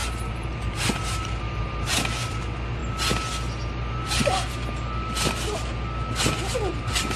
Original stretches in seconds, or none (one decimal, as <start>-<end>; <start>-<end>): 2.8-6.8